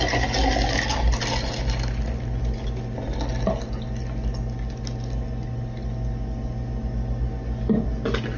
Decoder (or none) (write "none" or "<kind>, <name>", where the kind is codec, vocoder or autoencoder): none